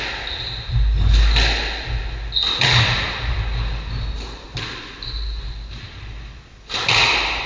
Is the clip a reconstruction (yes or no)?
no